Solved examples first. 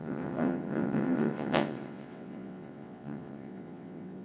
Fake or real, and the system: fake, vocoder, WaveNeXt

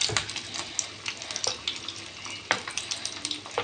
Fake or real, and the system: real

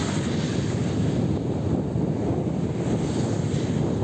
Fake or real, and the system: real